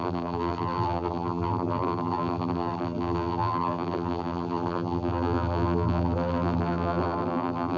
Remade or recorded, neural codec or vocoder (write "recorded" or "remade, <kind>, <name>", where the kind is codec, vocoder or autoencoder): remade, vocoder, BigVGAN v2